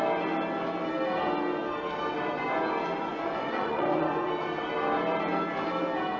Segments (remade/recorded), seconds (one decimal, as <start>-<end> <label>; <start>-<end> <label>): 0.0-3.1 recorded; 3.1-4.3 remade; 4.3-6.2 recorded

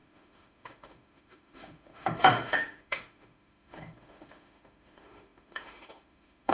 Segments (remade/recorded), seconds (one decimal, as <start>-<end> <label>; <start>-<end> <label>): 0.0-6.5 remade

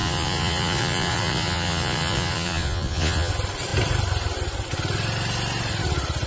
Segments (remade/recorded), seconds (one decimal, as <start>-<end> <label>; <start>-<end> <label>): 0.0-3.3 remade; 3.3-6.3 recorded

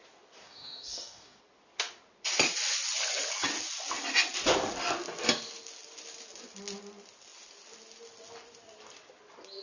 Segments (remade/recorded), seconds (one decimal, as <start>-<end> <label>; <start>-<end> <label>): 0.0-0.4 recorded; 0.4-1.4 remade; 1.4-9.6 recorded

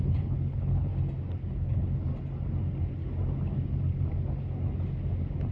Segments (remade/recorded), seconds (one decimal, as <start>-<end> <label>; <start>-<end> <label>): 0.0-0.9 remade; 0.9-1.5 recorded; 1.5-2.1 remade; 2.1-5.5 recorded

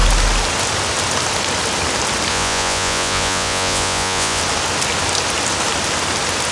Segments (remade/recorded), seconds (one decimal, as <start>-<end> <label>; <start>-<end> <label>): 0.0-2.3 recorded; 2.3-4.4 remade; 4.4-6.5 recorded

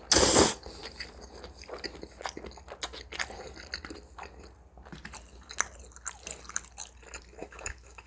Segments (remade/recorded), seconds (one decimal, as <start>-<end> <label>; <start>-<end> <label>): 0.0-7.4 recorded; 7.4-8.1 remade